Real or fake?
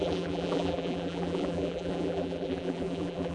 fake